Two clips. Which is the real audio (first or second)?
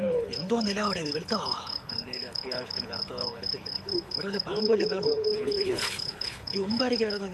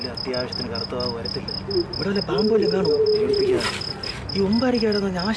second